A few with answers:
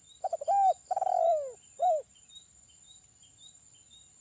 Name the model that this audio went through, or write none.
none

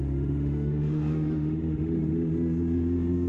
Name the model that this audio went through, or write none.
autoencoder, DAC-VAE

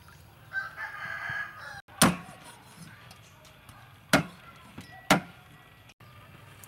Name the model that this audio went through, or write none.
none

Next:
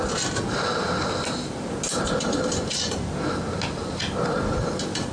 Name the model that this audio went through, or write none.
none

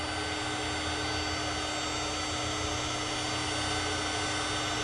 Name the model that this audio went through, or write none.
none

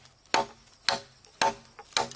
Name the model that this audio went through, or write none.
none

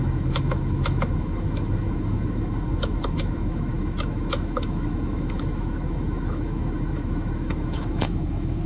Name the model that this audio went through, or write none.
autoencoder, DAC-VAE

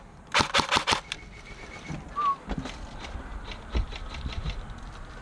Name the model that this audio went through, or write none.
none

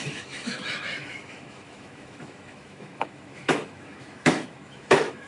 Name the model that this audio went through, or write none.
autoencoder, DAC-VAE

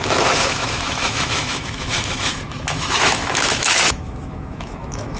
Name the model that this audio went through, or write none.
autoencoder, DAC-VAE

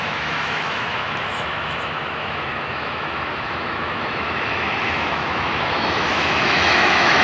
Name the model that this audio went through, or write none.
autoencoder, DAC-VAE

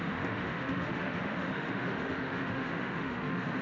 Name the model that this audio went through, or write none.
autoencoder, DAC-VAE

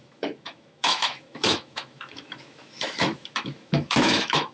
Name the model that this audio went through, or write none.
autoencoder, DAC-VAE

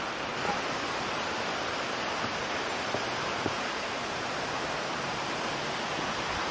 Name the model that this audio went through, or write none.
none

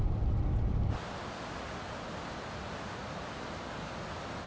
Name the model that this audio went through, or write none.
none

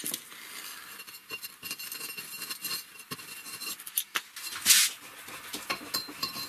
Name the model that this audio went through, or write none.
none